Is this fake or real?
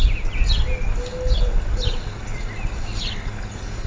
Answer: real